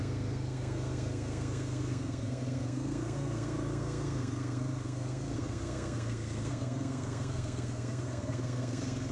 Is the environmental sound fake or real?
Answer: fake